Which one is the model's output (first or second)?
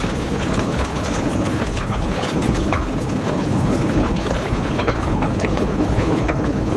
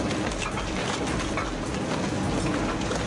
first